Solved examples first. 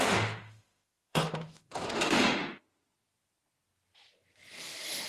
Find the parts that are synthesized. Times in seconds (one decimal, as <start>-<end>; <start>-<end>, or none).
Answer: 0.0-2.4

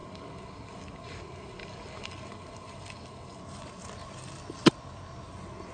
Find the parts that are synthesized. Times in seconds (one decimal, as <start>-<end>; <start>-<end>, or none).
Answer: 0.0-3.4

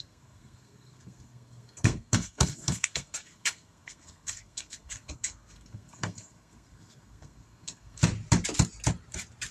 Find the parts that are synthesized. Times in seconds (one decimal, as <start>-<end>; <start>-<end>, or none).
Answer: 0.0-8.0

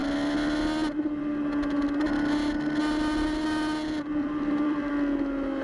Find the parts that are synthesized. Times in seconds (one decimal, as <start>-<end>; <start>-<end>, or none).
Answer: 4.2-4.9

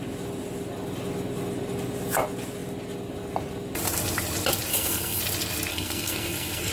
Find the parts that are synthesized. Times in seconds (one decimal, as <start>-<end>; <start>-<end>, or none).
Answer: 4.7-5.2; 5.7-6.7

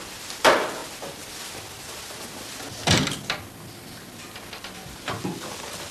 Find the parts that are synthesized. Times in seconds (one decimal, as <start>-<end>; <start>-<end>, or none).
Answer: none

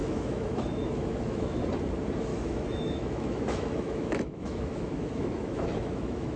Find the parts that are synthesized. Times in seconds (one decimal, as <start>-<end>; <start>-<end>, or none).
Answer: 0.0-1.6; 2.3-6.4